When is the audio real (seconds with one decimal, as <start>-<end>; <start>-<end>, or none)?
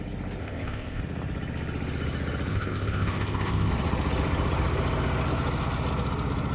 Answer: 0.0-0.4; 1.0-2.5; 3.7-6.5